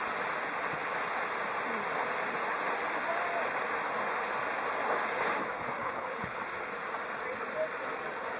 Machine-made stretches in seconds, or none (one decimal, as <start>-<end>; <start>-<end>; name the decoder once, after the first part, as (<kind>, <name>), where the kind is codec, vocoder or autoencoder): 5.8-6.4 (codec, HILCodec)

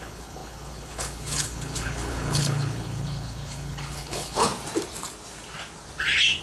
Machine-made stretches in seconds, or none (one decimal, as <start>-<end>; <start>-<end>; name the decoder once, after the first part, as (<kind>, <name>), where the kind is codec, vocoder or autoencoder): 0.0-4.5 (codec, HILCodec)

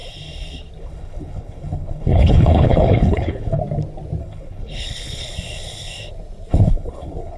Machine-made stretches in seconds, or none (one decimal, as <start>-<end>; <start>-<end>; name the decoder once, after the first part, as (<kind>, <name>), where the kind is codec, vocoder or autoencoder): 0.8-3.6 (codec, HILCodec); 4.2-5.3; 6.5-7.4

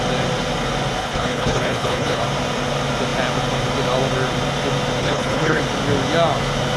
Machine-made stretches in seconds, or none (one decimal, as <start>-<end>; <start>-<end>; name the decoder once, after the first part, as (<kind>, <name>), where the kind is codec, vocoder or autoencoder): 1.0-2.2 (codec, HILCodec); 5.0-5.6

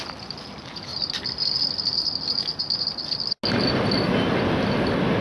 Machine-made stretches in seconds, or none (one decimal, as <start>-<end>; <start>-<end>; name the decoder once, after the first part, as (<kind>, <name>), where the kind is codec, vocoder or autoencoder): none

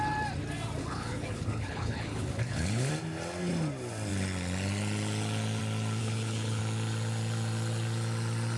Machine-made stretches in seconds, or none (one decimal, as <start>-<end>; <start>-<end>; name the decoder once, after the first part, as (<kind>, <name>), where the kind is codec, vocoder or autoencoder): 0.8-2.9 (codec, HILCodec); 6.0-6.6